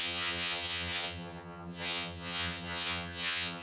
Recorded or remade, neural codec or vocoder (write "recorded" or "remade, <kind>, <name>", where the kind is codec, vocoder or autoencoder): remade, vocoder, HiFi-GAN